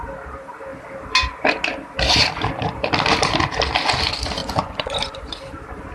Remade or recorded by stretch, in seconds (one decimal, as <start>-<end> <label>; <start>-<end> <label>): 0.0-4.4 recorded; 4.4-5.4 remade; 5.4-5.9 recorded